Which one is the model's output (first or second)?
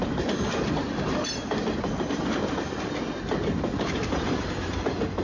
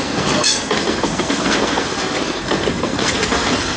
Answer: second